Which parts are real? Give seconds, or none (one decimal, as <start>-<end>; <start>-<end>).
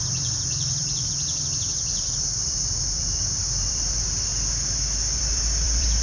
4.3-5.2